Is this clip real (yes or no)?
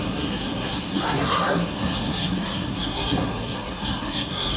no